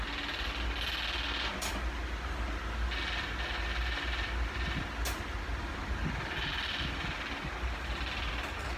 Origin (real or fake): real